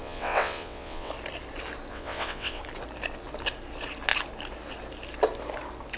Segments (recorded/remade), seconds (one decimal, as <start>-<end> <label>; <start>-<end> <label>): 0.0-1.1 remade; 1.1-1.9 recorded; 1.9-2.6 remade; 2.6-6.0 recorded